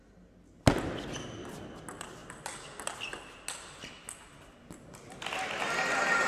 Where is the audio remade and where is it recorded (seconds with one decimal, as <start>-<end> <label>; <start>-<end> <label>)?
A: 0.0-6.3 recorded